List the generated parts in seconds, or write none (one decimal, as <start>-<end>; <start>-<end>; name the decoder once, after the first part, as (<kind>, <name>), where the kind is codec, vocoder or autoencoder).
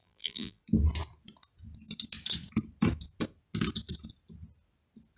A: 0.0-0.6 (vocoder, BigVGAN v2)